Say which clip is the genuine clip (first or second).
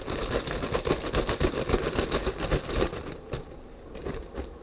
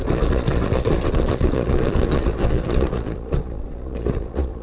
first